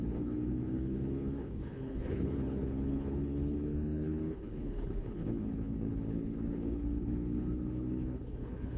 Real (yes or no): no